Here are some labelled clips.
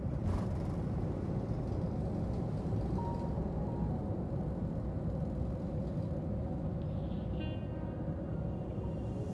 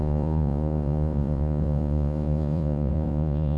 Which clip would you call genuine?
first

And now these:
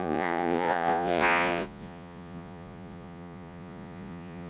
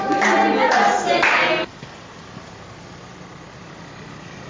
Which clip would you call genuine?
second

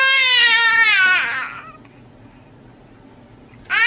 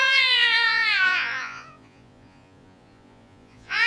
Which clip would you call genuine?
first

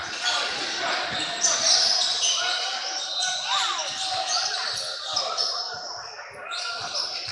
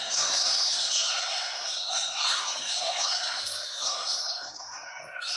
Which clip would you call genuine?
first